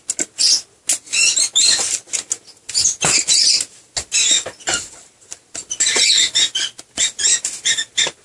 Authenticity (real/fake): real